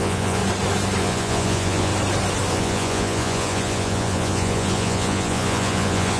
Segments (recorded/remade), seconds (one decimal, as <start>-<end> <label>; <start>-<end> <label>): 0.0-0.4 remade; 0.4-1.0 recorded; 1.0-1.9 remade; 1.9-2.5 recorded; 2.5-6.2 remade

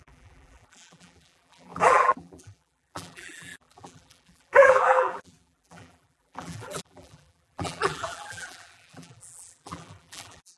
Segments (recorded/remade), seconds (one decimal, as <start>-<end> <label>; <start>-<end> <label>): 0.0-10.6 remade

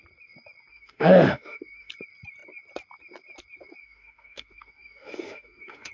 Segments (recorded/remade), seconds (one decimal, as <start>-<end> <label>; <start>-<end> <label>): 0.0-0.7 recorded; 0.7-1.9 remade; 1.9-3.8 recorded; 3.8-5.9 remade

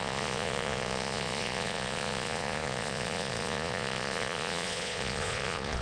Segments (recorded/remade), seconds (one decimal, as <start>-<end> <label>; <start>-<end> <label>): 0.0-5.8 remade